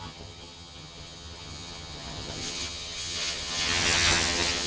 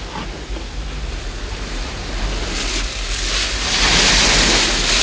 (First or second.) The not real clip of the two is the first